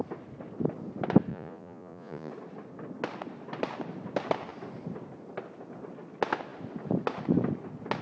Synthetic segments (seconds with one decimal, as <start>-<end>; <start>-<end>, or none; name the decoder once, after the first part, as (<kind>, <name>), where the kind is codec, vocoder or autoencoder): 1.3-2.3 (vocoder, Vocos)